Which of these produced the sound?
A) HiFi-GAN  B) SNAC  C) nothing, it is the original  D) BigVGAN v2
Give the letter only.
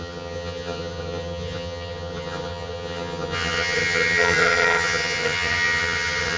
A